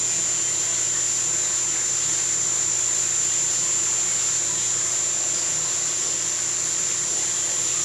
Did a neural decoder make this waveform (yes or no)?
no